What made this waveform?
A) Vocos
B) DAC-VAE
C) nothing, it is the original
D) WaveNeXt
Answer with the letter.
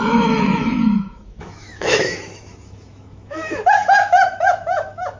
B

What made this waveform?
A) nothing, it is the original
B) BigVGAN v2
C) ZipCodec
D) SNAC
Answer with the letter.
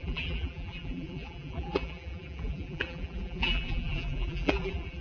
B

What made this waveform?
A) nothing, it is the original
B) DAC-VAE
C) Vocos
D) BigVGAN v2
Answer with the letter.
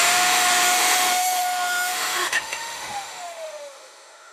B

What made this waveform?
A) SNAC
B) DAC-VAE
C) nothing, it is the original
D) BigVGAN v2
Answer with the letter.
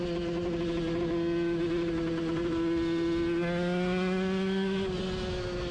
C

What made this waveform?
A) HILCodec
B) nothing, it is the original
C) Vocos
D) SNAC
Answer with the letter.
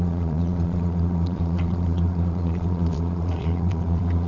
C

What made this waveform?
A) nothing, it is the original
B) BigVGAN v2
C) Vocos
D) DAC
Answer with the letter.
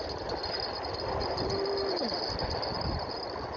A